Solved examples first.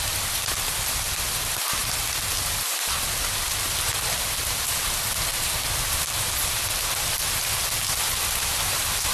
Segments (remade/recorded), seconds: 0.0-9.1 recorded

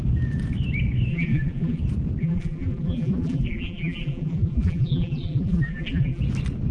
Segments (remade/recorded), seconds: 0.0-1.1 recorded; 1.1-1.8 remade; 1.8-2.2 recorded; 2.2-6.2 remade; 6.2-6.7 recorded

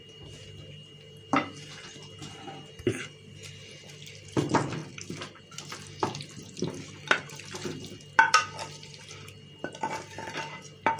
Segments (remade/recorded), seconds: 0.0-11.0 remade

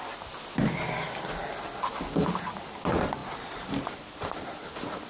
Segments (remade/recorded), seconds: 0.0-3.2 recorded; 3.2-4.5 remade; 4.5-5.1 recorded

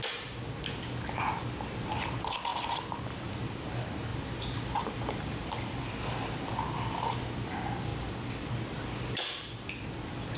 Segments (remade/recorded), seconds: 0.0-2.5 recorded; 2.5-3.3 remade; 3.3-4.1 recorded; 4.1-5.8 remade; 5.8-7.9 recorded; 7.9-9.7 remade; 9.7-10.4 recorded

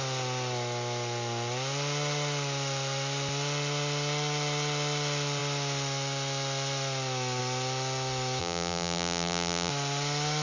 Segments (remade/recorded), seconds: 0.0-8.4 recorded; 8.4-9.7 remade; 9.7-10.4 recorded